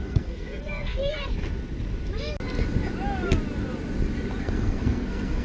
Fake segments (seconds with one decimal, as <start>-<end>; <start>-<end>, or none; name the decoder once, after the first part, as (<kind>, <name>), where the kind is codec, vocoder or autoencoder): 0.0-1.3 (codec, SNAC); 4.4-5.4